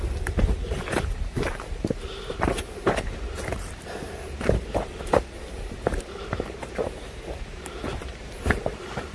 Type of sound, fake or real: fake